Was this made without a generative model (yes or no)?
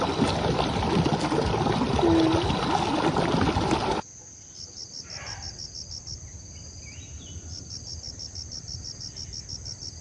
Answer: yes